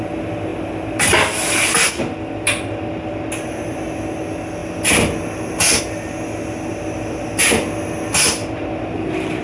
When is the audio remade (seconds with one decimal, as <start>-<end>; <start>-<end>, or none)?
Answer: none